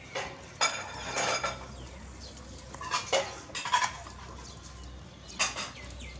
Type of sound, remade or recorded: recorded